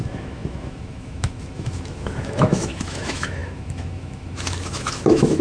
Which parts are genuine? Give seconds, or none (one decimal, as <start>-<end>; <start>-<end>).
none